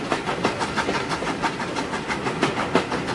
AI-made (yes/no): no